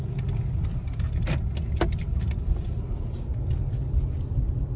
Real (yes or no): yes